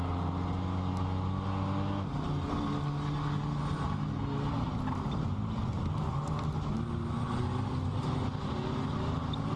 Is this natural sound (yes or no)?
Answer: yes